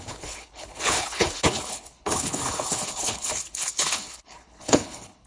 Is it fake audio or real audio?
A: fake